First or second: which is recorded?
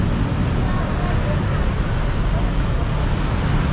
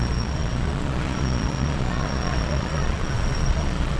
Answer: first